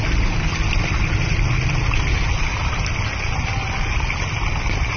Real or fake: real